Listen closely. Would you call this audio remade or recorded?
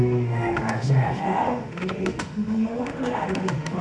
remade